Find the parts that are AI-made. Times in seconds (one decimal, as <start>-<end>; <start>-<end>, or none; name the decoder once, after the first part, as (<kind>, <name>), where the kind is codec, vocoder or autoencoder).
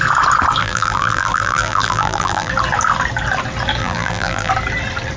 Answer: 0.6-2.5 (vocoder, BigVGAN v2); 3.8-4.5